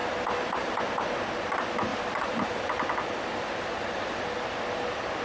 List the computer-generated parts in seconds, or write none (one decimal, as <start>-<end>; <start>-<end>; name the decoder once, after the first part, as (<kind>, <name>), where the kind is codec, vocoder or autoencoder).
0.0-0.8 (vocoder, BigVGAN v2); 1.9-4.8